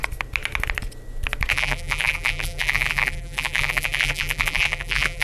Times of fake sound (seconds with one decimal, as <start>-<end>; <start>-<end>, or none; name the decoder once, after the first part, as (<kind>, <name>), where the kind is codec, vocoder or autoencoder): 1.5-5.2 (vocoder, BigVGAN v2)